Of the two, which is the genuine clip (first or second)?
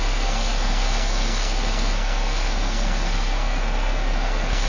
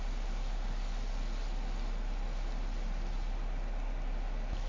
second